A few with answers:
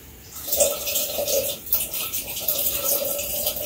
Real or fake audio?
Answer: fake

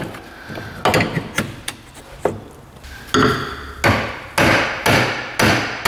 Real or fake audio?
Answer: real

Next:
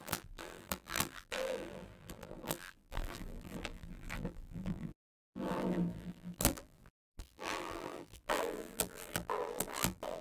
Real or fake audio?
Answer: fake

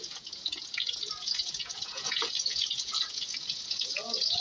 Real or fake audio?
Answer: fake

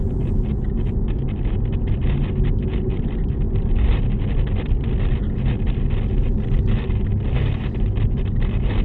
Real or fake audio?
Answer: real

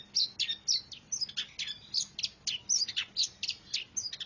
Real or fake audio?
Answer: real